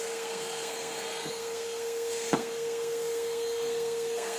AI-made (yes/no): yes